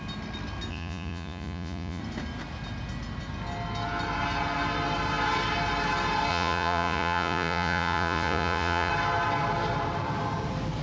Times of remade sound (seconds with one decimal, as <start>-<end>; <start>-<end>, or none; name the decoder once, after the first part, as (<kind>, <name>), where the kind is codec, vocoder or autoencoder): 0.7-2.0 (vocoder, Vocos); 6.3-8.9